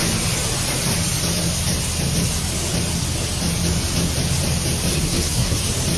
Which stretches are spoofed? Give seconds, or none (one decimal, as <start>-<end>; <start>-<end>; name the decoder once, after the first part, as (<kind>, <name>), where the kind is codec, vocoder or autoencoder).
4.9-5.6 (codec, SNAC)